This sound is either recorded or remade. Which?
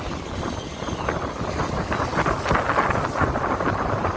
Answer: recorded